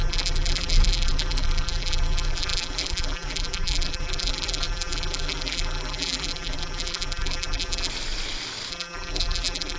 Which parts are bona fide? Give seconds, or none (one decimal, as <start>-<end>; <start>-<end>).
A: 7.9-8.7